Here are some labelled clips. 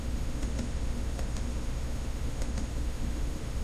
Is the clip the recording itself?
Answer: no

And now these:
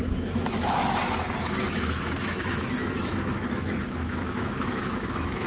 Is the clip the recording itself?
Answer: no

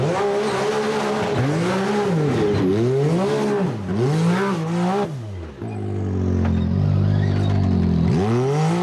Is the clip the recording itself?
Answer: yes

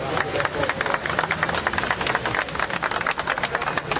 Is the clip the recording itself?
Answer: yes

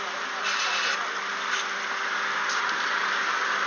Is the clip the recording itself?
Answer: yes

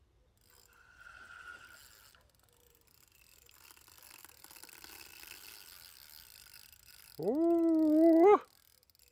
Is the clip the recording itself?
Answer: yes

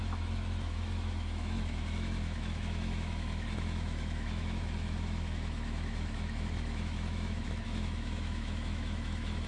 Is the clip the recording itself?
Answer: no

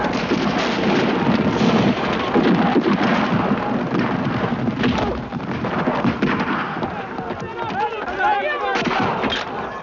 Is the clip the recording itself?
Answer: yes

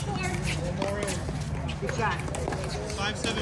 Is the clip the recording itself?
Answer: yes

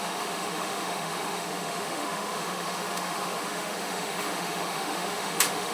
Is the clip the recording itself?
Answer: no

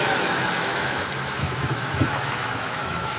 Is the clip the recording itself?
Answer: no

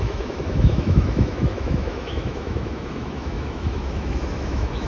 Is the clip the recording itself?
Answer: no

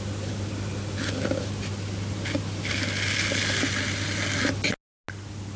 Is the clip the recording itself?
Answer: yes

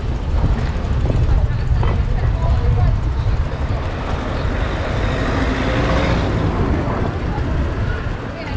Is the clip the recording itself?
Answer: yes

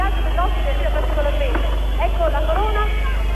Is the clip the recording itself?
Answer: yes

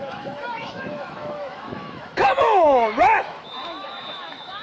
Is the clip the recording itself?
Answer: no